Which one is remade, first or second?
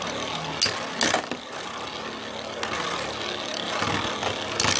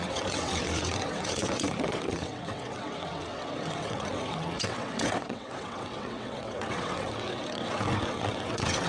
second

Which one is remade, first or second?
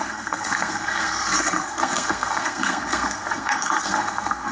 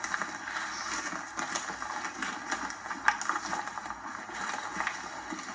first